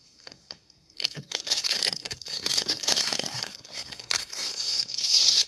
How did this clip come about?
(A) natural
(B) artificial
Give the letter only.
B